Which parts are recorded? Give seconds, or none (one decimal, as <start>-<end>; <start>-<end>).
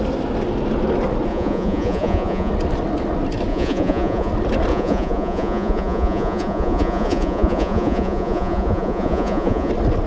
0.0-1.3; 2.5-3.5; 4.3-4.7; 9.7-10.1